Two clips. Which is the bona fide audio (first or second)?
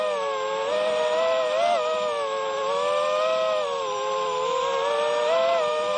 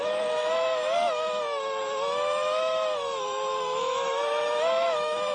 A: first